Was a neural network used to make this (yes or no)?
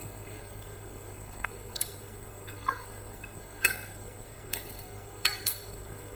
yes